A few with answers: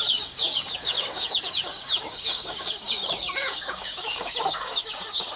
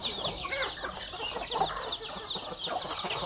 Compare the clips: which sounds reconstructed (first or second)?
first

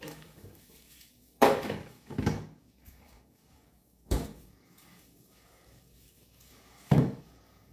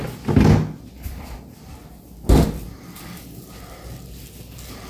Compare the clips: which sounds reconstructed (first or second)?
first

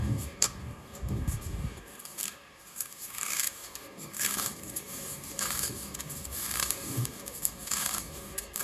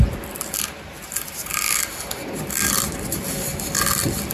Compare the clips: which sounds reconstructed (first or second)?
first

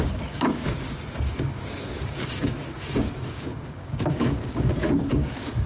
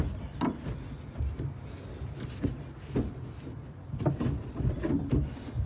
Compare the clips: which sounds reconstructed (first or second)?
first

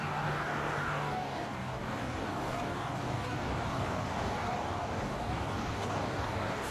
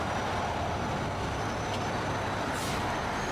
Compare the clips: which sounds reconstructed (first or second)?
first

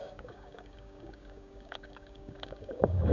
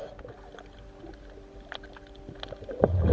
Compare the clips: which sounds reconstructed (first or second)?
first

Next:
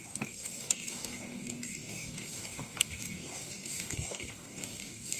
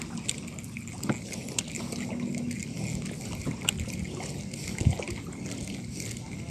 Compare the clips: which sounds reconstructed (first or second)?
first